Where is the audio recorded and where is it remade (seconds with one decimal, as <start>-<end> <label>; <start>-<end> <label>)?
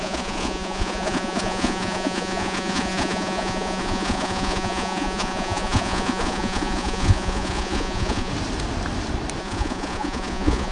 0.0-8.3 remade; 8.3-9.4 recorded; 9.4-10.7 remade